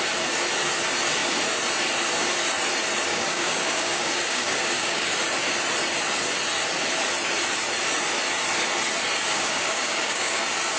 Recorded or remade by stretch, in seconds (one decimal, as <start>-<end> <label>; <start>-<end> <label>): 0.0-3.1 recorded; 3.1-5.1 remade; 5.1-9.3 recorded; 9.3-10.4 remade; 10.4-10.8 recorded